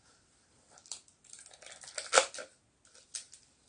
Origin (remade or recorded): recorded